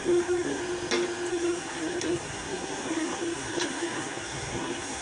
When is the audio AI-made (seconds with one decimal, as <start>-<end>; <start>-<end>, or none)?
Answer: 0.0-0.6; 1.3-5.0